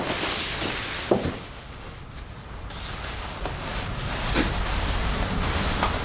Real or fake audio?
real